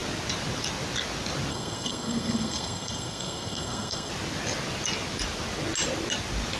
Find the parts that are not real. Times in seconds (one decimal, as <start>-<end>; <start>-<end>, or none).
1.5-4.1